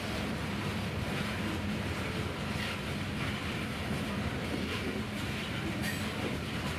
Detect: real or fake real